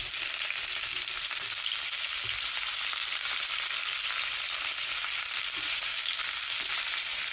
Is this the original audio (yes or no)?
yes